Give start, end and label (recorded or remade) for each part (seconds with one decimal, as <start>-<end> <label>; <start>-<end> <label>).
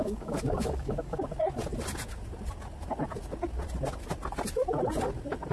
0.0-1.2 remade; 1.2-5.5 recorded